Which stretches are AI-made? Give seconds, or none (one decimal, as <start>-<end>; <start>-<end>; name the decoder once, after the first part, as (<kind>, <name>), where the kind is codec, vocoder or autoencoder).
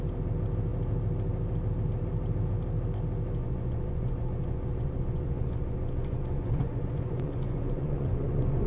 3.4-8.7 (vocoder, Vocos)